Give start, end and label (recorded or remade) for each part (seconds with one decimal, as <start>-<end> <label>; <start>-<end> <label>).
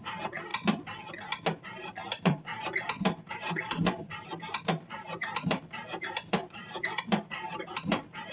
0.0-0.5 remade; 0.5-1.6 recorded; 1.6-8.3 remade